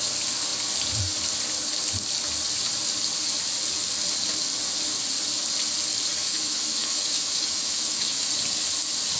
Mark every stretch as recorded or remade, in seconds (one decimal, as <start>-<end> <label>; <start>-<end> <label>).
0.0-6.2 recorded; 6.2-8.3 remade; 8.3-9.2 recorded

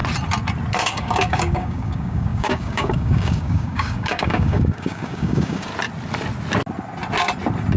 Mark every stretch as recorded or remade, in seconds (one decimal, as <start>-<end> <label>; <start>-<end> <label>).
0.0-0.8 recorded; 0.8-5.7 remade; 5.7-7.8 recorded